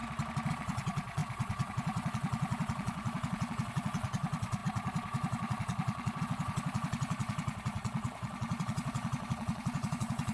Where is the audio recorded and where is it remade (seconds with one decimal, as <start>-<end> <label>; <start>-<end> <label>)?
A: 0.0-0.5 recorded; 0.5-10.3 remade